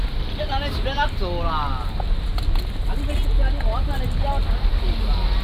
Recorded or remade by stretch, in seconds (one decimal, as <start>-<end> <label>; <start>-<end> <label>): 0.0-5.4 recorded